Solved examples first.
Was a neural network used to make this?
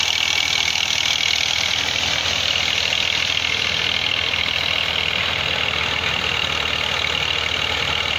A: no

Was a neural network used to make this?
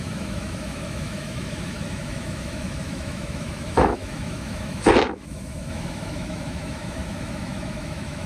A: yes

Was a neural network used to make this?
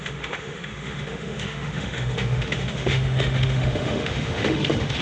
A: yes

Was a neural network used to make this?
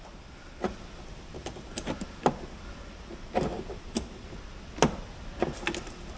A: no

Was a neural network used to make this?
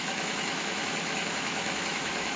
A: yes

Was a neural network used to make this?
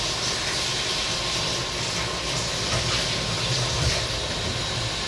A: no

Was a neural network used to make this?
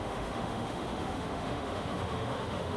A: yes